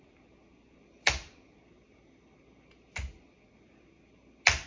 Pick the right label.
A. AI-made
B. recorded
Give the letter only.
B